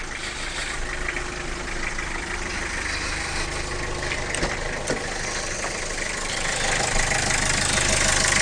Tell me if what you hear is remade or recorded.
recorded